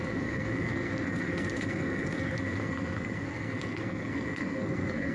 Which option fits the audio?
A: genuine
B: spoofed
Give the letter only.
B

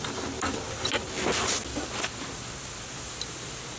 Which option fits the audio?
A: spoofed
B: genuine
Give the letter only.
B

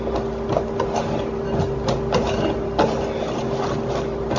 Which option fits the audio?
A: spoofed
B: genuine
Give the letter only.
B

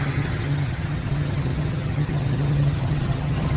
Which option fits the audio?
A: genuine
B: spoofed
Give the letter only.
B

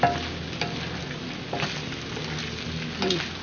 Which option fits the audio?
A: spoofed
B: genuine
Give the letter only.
B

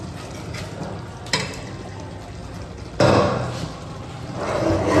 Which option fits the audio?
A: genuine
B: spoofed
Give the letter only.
A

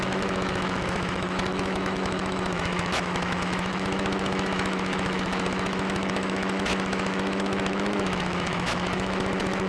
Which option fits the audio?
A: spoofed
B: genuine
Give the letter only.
A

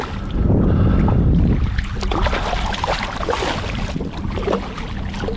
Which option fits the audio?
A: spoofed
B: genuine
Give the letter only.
B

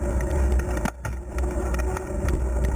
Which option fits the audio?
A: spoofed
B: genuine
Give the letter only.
B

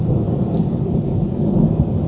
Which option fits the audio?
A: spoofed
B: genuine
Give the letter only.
B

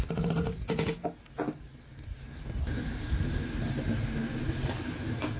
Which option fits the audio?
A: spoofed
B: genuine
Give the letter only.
B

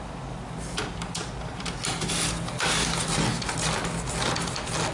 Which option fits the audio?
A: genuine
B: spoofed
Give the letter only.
A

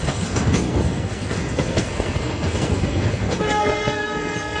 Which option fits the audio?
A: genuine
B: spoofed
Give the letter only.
B